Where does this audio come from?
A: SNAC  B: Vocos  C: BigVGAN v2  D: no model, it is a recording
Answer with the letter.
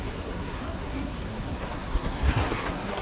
A